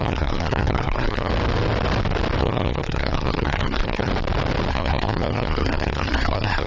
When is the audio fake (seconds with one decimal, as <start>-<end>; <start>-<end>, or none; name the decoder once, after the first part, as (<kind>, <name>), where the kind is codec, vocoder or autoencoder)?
0.0-1.3 (codec, SNAC); 2.4-4.1; 4.7-6.7